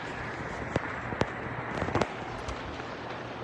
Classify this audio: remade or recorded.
recorded